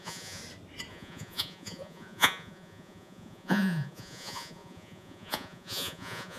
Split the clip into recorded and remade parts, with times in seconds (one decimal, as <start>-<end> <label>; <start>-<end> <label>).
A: 0.0-0.4 remade; 0.4-0.9 recorded; 0.9-6.4 remade

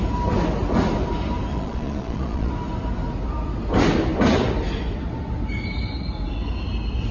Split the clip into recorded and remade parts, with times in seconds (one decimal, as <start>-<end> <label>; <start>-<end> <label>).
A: 0.0-1.5 recorded; 1.5-2.5 remade; 2.5-7.1 recorded